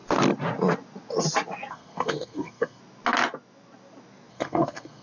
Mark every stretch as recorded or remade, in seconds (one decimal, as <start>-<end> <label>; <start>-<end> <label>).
0.0-1.7 recorded; 1.7-2.8 remade; 2.8-4.3 recorded; 4.3-5.0 remade